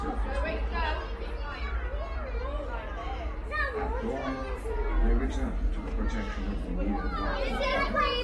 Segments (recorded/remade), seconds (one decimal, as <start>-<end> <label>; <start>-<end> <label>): 0.0-8.2 recorded